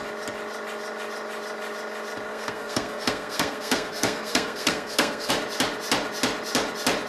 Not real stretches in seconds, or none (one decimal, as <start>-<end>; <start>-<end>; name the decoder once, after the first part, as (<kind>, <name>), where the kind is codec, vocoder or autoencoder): 2.3-5.3 (codec, SNAC)